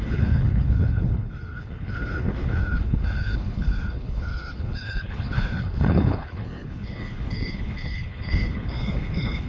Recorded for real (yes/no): no